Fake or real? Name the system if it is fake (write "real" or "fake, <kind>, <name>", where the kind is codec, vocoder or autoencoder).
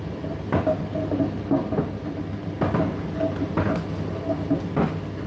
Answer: real